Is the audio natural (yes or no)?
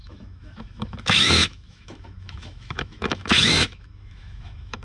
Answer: no